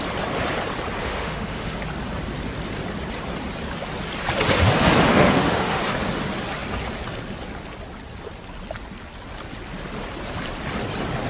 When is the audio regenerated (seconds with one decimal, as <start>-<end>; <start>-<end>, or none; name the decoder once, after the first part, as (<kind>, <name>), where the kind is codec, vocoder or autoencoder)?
1.0-1.8 (autoencoder, DAC-VAE); 5.1-5.8